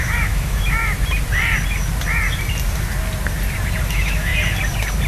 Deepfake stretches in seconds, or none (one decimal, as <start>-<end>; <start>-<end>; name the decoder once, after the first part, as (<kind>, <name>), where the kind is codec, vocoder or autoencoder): 0.0-0.8 (autoencoder, DAC-VAE); 3.9-4.3